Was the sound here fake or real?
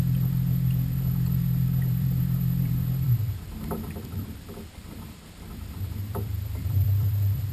fake